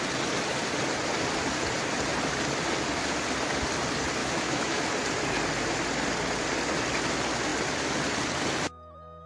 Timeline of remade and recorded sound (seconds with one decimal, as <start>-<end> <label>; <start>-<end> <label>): 0.0-4.2 recorded; 4.2-4.8 remade; 4.8-9.3 recorded